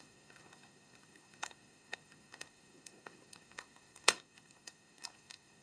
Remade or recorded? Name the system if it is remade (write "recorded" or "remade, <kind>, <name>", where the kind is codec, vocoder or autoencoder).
remade, codec, SNAC